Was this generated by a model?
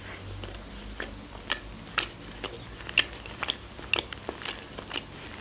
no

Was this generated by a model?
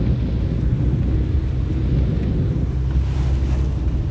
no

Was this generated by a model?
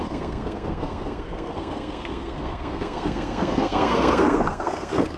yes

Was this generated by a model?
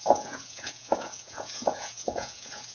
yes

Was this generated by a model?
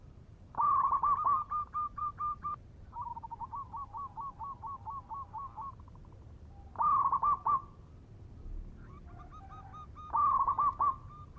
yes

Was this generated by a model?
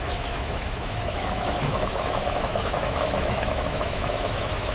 yes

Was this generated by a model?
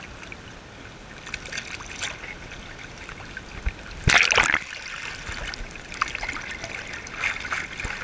no